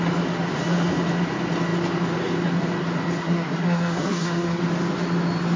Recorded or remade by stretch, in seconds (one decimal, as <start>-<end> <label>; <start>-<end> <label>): 0.0-3.2 recorded; 3.2-4.6 remade; 4.6-5.6 recorded